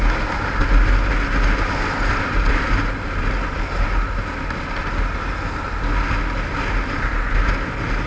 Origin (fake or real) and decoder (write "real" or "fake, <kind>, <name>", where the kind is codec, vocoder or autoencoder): real